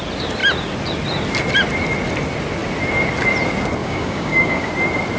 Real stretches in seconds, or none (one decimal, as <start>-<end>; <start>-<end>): 0.0-3.8; 4.7-5.2